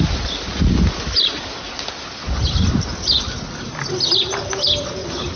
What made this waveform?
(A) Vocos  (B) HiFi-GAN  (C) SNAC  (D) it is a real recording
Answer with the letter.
D